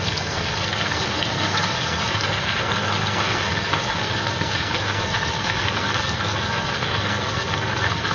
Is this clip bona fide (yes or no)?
no